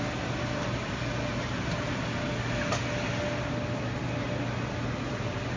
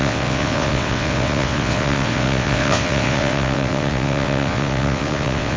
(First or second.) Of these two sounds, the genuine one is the first